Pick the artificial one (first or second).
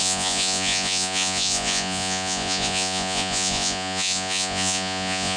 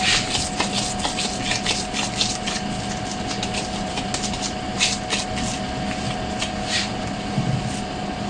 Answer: first